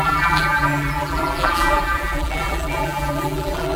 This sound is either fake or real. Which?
fake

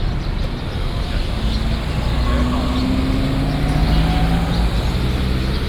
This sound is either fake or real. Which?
real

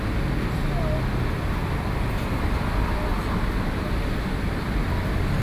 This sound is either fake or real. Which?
real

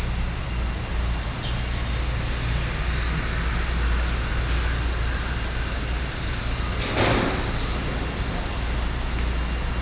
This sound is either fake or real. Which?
real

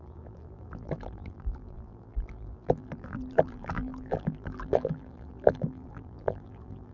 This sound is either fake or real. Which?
fake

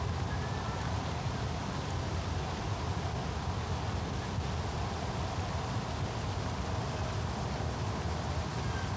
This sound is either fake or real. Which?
real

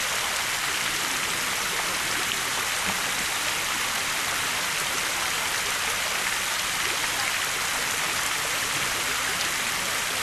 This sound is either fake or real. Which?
real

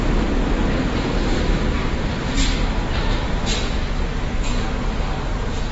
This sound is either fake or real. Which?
real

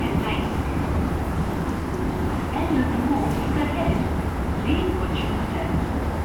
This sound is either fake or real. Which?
fake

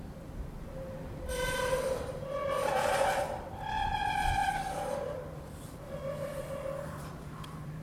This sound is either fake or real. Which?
fake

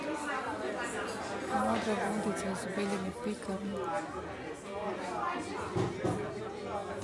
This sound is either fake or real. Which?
real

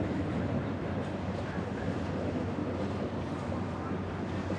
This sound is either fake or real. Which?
real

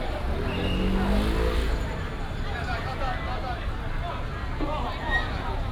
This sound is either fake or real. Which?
real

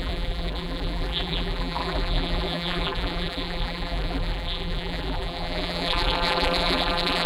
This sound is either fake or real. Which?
fake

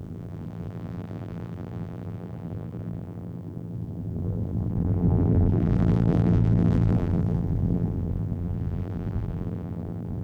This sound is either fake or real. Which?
fake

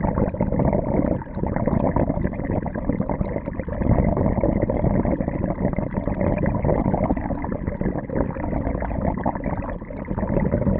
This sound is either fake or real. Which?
real